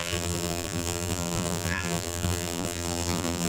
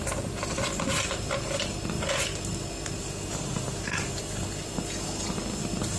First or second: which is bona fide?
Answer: second